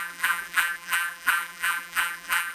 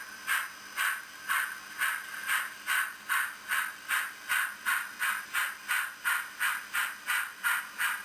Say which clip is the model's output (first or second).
first